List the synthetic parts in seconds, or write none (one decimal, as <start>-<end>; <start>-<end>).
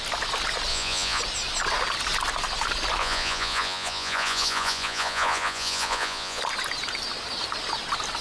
0.7-1.2; 3.0-6.4